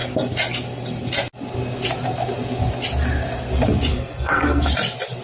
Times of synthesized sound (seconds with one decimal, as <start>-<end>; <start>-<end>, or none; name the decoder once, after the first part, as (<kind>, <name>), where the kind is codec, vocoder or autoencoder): 3.9-4.7 (codec, SNAC)